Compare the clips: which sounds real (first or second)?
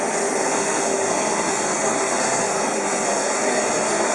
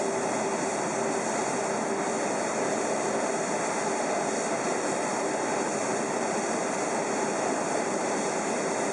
second